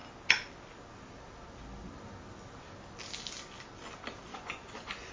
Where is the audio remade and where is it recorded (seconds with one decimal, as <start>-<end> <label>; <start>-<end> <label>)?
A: 0.0-4.3 recorded; 4.3-5.1 remade